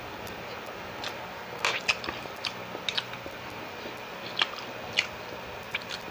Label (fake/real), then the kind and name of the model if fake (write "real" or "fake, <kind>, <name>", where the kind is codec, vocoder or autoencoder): real